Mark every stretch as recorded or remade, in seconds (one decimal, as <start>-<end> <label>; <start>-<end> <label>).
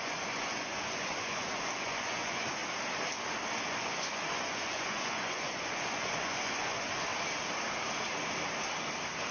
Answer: 0.0-2.6 remade; 2.6-3.6 recorded; 3.6-7.1 remade; 7.1-9.3 recorded